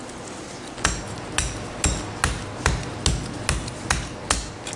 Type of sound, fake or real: real